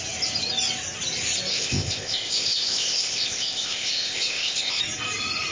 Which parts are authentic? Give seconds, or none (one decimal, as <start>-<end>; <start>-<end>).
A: 0.0-1.5; 4.8-5.5